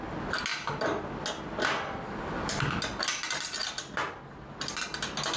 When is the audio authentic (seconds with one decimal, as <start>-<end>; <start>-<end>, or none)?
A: 0.0-5.4